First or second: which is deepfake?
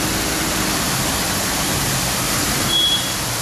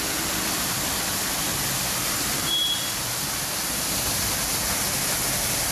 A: second